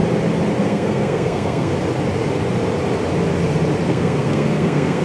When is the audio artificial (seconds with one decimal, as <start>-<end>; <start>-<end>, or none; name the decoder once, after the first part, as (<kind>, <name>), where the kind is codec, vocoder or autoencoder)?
0.6-1.7 (codec, SNAC); 3.9-5.0